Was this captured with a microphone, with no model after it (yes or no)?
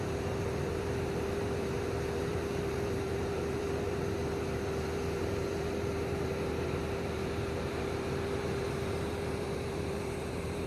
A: no